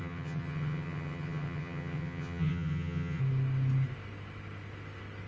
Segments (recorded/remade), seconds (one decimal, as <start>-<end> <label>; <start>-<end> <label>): 0.0-3.2 remade; 3.2-5.3 recorded